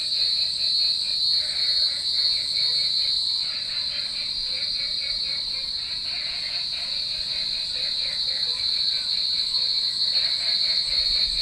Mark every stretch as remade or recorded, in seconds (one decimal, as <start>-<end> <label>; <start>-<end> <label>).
0.0-3.4 recorded; 3.4-4.0 remade; 4.0-11.4 recorded